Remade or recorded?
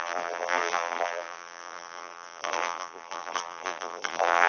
remade